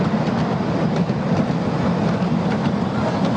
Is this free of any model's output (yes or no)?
yes